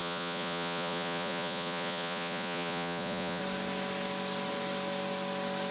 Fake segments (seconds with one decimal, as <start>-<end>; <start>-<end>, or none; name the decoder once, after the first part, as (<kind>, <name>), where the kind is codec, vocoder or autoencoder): 0.0-3.4 (vocoder, Vocos)